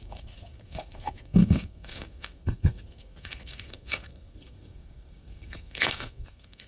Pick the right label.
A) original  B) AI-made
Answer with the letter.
B